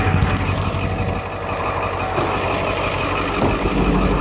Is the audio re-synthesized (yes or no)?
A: no